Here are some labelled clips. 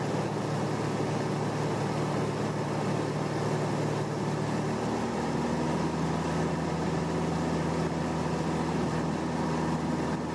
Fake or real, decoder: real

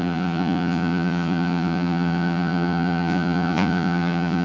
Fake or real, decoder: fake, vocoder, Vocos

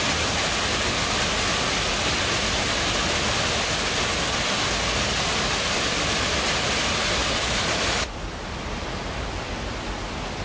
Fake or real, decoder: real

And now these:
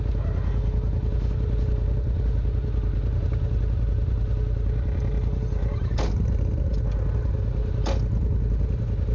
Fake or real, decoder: real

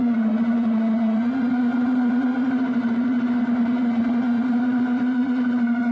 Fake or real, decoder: fake, vocoder, Vocos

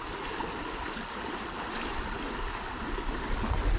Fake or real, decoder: real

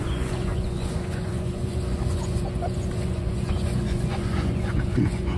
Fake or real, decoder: fake, vocoder, Vocos